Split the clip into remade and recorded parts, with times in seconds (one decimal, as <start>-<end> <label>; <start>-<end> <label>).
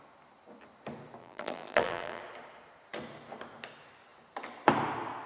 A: 0.0-1.2 recorded; 1.2-2.2 remade; 2.2-5.3 recorded